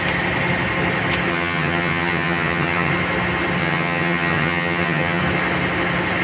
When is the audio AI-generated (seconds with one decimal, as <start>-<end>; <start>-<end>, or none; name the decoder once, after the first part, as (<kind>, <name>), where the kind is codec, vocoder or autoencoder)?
1.3-2.9 (vocoder, HiFi-GAN); 3.6-5.2